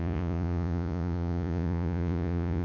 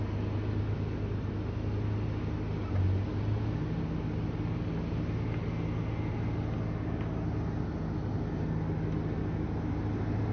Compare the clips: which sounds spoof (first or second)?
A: first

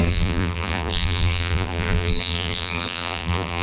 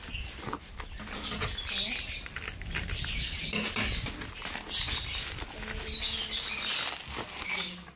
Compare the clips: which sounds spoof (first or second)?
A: first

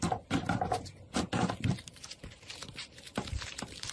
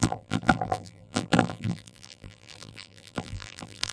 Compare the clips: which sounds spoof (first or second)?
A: second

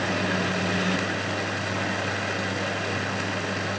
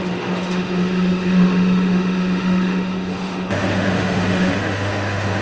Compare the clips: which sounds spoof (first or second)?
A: second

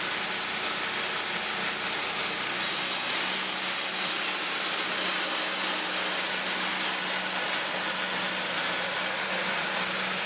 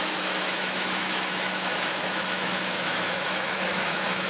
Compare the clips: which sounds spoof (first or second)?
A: second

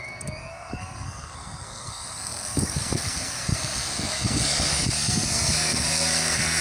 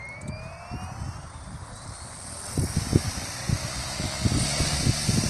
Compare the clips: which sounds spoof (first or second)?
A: first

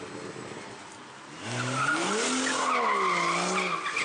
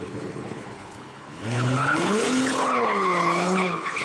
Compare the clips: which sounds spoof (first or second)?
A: second